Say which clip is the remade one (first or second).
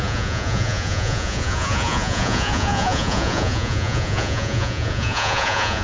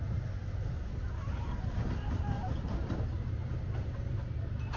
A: first